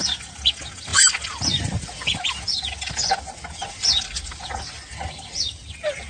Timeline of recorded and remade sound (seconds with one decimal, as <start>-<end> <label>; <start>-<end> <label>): 0.0-6.1 recorded